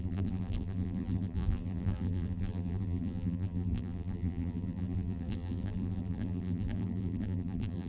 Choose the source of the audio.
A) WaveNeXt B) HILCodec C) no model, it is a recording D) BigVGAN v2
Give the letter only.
D